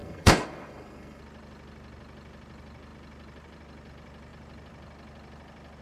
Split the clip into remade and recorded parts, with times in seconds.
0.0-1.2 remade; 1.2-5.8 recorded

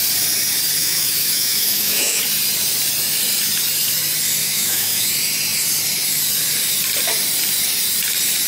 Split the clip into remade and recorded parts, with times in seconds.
0.0-0.8 recorded; 0.8-2.2 remade; 2.2-4.4 recorded; 4.4-5.1 remade; 5.1-8.5 recorded

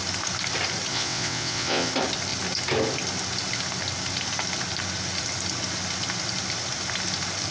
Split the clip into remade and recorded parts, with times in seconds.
0.0-0.9 recorded; 0.9-1.9 remade; 1.9-7.5 recorded

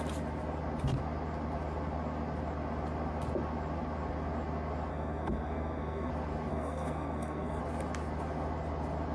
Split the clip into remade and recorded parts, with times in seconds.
0.0-4.9 recorded; 4.9-6.1 remade; 6.1-6.5 recorded; 6.5-7.6 remade; 7.6-9.1 recorded

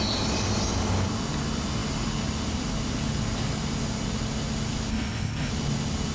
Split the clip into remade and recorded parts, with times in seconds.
0.0-4.9 recorded; 4.9-5.5 remade; 5.5-6.1 recorded